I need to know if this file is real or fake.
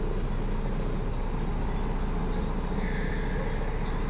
real